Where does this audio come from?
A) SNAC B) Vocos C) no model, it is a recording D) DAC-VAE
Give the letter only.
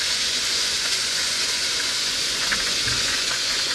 B